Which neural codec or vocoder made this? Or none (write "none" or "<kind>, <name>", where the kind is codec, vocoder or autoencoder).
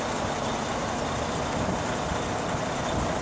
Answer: none